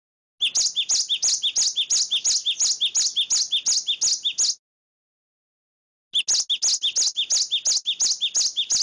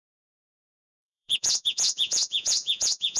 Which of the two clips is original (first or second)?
first